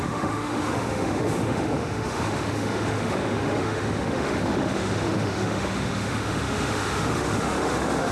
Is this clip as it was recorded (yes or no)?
no